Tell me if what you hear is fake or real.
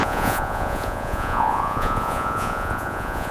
fake